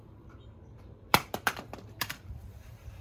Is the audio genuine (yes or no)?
no